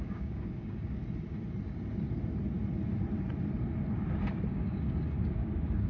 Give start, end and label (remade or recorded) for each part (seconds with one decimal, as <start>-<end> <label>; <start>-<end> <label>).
0.0-1.0 remade; 1.0-4.5 recorded; 4.5-5.9 remade